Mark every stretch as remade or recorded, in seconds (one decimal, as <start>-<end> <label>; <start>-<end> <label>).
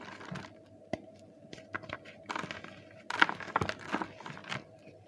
0.0-5.1 recorded